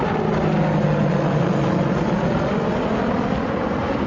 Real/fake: real